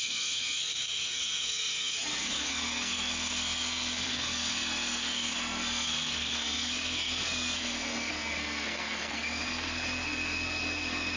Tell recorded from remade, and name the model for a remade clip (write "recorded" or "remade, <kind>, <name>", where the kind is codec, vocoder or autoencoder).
remade, codec, SNAC